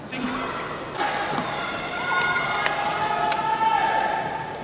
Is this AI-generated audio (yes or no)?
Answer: no